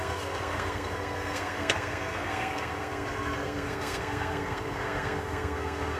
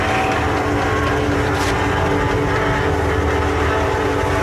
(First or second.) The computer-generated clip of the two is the first